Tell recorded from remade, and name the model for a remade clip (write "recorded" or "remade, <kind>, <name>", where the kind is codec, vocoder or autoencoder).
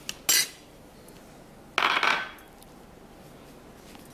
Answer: recorded